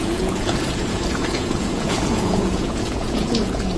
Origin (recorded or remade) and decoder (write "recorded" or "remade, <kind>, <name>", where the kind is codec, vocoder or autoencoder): remade, vocoder, Vocos